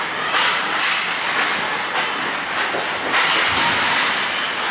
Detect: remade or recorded recorded